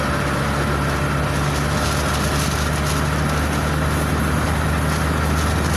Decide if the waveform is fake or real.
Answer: real